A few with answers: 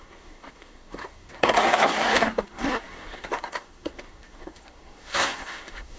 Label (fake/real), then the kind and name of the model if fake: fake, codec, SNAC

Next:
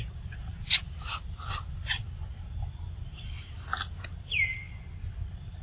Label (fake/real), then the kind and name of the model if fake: real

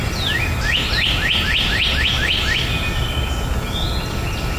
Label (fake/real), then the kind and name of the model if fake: real